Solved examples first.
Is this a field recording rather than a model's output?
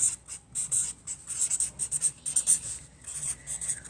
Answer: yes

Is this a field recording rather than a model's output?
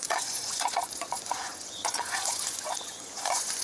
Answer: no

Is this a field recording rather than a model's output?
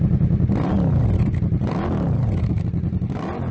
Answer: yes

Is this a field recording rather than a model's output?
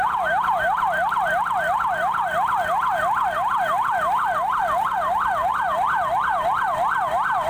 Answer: yes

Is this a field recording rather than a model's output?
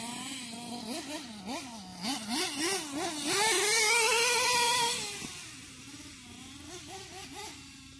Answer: yes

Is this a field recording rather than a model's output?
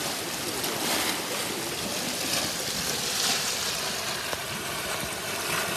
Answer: yes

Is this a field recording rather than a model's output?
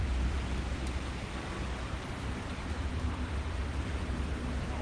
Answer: yes